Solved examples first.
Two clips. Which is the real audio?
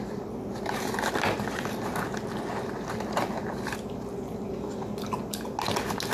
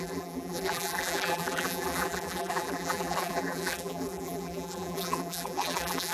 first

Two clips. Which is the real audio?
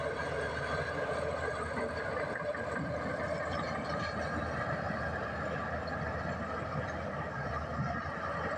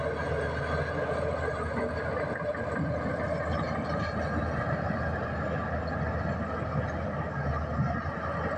second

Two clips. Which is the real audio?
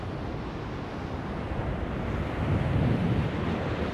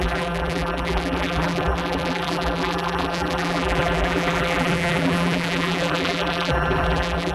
first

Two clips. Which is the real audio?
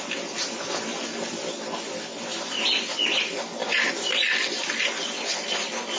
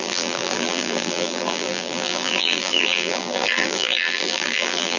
first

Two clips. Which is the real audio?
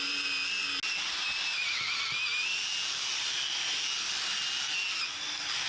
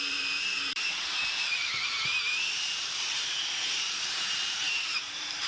first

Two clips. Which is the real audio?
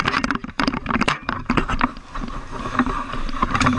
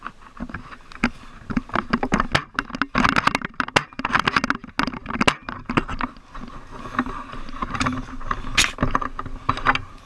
second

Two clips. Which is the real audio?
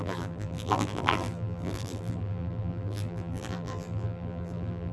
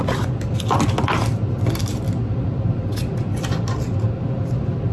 second